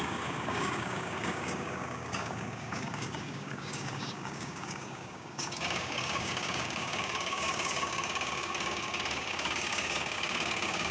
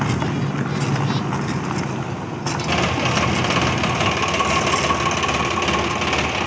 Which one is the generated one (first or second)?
first